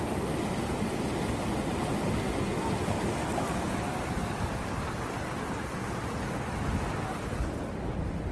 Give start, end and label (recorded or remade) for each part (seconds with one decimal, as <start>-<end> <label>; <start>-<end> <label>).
0.0-8.3 recorded

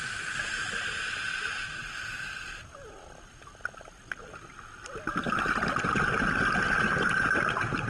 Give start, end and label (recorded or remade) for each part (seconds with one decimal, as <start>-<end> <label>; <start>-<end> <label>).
0.0-7.9 recorded

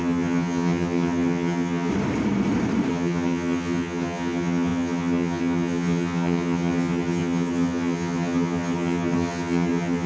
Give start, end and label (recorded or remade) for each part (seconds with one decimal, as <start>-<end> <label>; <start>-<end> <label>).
0.0-1.9 remade; 1.9-2.9 recorded; 2.9-10.1 remade

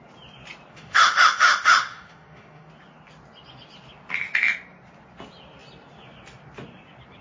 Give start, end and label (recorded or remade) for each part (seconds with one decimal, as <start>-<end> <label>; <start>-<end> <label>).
0.0-0.7 recorded; 0.7-2.7 remade; 2.7-7.2 recorded

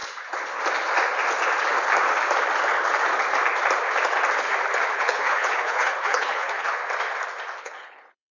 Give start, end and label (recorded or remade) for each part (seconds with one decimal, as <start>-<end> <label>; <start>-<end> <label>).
0.0-4.9 recorded; 4.9-6.8 remade; 6.8-7.6 recorded; 7.6-8.3 remade

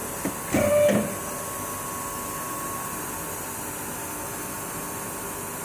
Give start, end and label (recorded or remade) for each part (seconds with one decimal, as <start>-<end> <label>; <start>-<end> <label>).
0.0-5.6 recorded

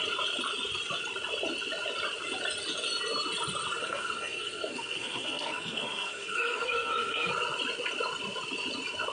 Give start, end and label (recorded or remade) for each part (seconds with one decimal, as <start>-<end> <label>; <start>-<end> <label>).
0.0-3.8 recorded; 3.8-7.3 remade; 7.3-9.1 recorded